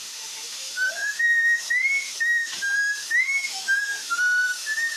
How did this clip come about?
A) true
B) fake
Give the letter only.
B